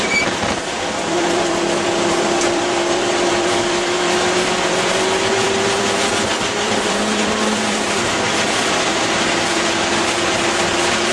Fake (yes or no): yes